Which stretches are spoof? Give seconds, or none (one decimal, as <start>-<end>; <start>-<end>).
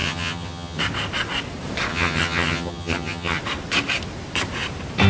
0.0-0.8; 1.9-3.4